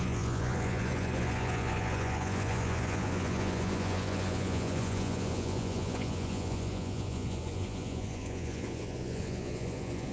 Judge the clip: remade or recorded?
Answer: remade